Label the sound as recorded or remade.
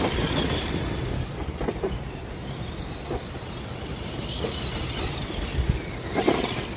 recorded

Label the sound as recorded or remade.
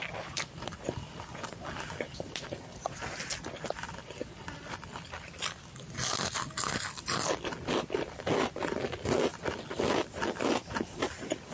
recorded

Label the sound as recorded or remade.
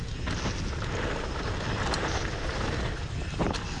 recorded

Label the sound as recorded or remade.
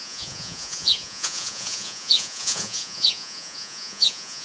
remade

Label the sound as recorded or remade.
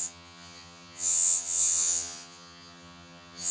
remade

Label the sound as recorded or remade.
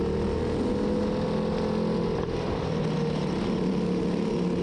recorded